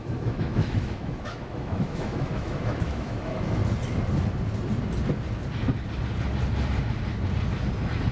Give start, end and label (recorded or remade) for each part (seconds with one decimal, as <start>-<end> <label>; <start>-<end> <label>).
0.0-3.6 remade; 3.6-8.1 recorded